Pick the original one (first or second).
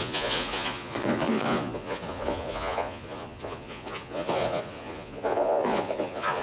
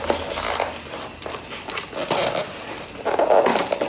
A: second